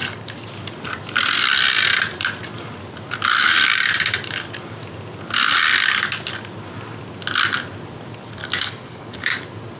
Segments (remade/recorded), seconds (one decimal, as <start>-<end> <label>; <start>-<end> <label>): 0.0-8.4 recorded; 8.4-9.4 remade; 9.4-9.8 recorded